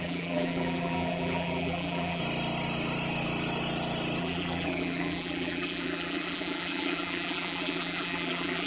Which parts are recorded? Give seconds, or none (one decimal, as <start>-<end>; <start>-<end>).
2.2-4.2